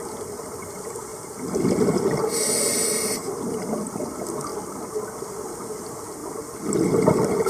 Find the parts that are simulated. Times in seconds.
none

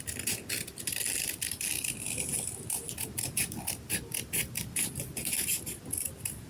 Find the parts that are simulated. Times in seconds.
none

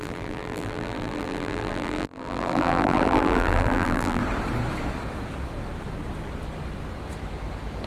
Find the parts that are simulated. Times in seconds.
0.0-4.2 (vocoder, BigVGAN v2)

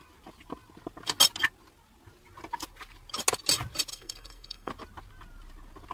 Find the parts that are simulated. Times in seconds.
3.9-4.7 (codec, SNAC)

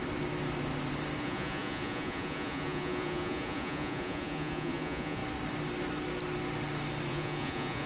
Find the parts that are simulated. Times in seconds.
1.2-5.2 (vocoder, Vocos); 7.1-7.9

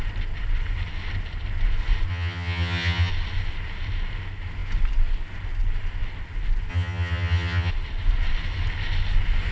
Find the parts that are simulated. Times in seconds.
2.1-3.1 (vocoder, HiFi-GAN); 6.7-7.7

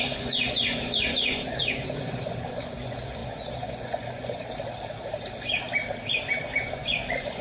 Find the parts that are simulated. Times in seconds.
0.0-4.4 (vocoder, Vocos); 6.4-7.4